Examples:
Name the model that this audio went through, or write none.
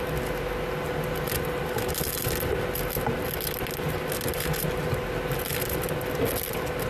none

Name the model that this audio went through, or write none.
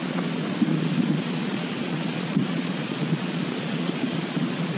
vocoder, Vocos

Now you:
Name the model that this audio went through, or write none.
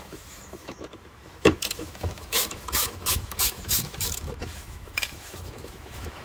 autoencoder, DAC-VAE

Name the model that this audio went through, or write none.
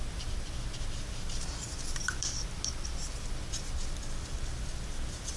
none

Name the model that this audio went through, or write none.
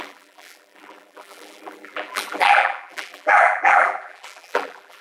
vocoder, BigVGAN v2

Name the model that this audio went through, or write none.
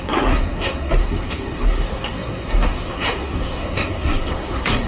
codec, SNAC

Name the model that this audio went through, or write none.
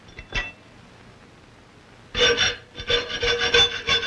none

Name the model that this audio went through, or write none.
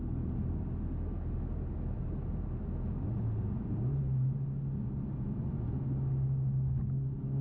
none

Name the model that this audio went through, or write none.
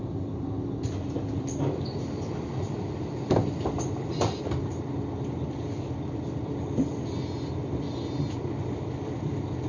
vocoder, BigVGAN v2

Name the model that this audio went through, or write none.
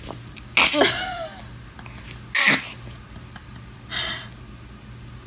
none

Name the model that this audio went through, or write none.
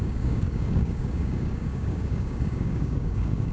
codec, DAC